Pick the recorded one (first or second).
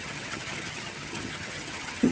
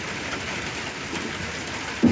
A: second